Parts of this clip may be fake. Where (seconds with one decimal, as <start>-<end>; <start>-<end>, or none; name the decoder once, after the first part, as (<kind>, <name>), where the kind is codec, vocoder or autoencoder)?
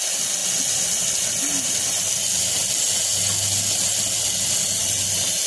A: none